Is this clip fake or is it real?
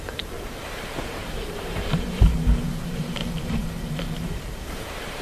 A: fake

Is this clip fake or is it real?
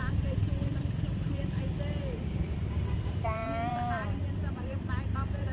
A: fake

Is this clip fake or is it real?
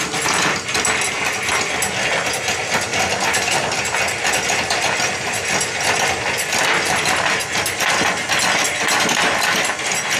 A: real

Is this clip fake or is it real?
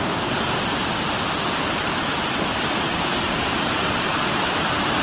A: real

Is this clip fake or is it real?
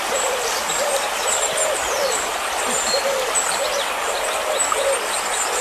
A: fake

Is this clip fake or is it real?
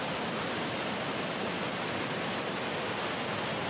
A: real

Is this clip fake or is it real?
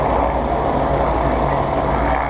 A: real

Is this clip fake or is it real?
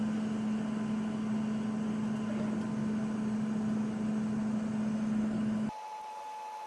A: real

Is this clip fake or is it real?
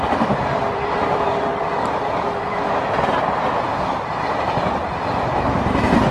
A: fake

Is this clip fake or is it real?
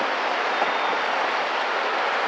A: real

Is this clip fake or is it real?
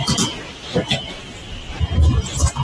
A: real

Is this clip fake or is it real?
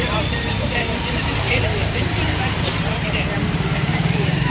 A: fake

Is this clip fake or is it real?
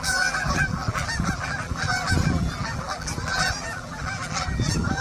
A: fake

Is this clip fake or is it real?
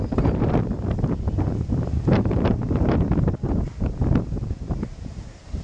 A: fake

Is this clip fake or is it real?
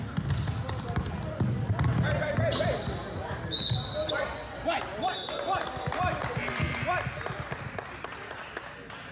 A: real